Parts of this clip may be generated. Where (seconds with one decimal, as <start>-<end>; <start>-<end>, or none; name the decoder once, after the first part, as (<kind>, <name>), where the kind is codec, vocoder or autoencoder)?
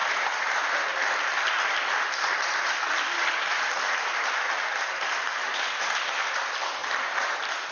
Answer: 0.0-0.9 (vocoder, BigVGAN v2); 5.5-6.8